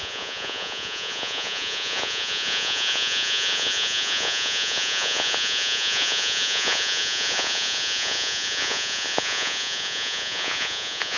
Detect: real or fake fake